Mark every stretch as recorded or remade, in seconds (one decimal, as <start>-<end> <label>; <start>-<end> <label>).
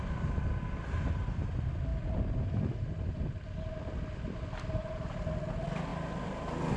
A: 0.0-1.9 recorded; 1.9-4.4 remade; 4.4-6.8 recorded